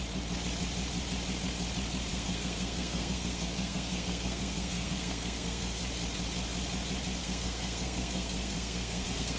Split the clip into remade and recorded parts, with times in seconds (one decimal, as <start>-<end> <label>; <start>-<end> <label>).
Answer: 0.0-2.1 recorded; 2.1-5.8 remade; 5.8-7.2 recorded; 7.2-9.4 remade